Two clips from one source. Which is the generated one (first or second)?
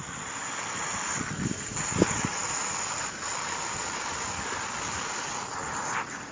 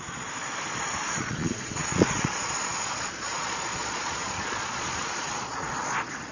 second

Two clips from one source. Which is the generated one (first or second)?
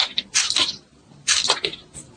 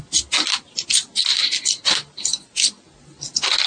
first